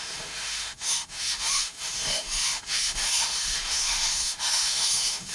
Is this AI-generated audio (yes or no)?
yes